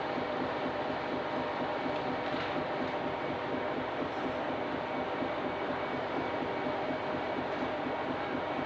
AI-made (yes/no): no